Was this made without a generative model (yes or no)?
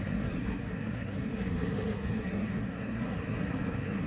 no